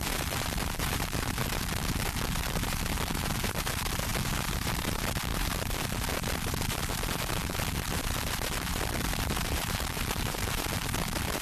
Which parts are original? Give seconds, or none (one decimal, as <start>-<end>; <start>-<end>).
none